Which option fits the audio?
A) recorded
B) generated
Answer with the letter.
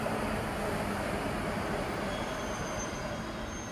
A